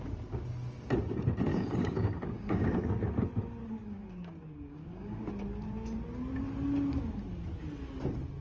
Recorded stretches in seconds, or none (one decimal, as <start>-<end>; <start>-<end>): 0.0-1.5; 3.0-3.6; 5.3-8.4